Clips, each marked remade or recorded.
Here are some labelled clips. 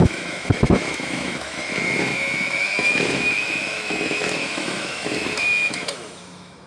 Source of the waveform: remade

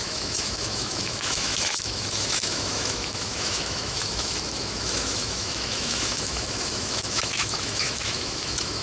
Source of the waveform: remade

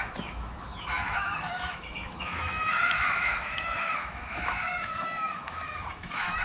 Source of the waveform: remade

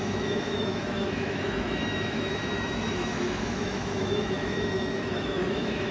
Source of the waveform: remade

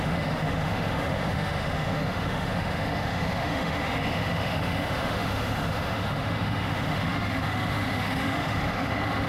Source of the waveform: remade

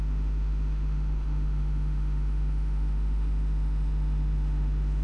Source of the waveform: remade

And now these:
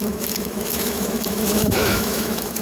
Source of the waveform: remade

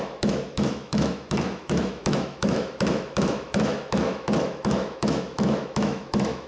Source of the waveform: remade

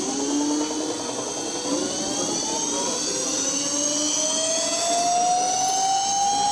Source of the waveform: recorded